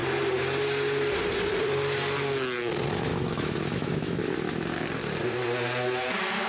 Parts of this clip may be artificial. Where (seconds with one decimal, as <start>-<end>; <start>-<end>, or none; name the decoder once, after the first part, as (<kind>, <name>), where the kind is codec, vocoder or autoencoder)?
3.1-4.2 (autoencoder, DAC-VAE)